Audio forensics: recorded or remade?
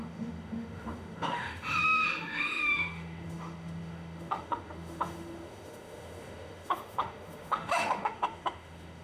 remade